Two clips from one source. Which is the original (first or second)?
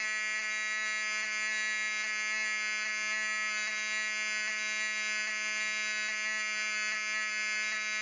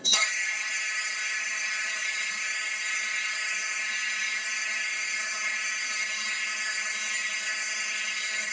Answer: first